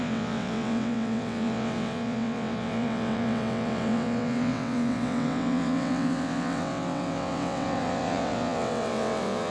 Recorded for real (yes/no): no